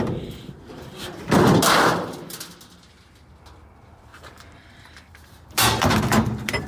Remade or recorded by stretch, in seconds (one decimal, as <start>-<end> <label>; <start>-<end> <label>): 0.0-6.7 recorded